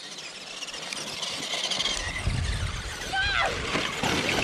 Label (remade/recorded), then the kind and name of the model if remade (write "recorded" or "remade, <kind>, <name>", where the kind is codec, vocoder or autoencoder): recorded